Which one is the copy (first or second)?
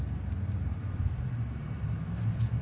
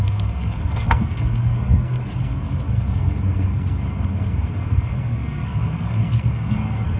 second